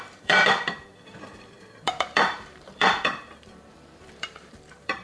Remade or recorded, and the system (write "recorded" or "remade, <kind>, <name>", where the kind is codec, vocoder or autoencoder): remade, vocoder, BigVGAN v2